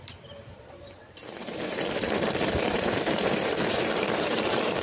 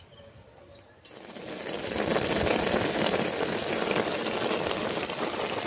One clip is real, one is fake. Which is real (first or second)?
second